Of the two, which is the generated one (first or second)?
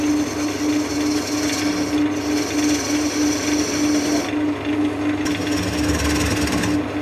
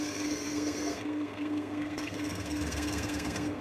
second